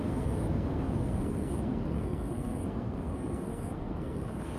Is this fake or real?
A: fake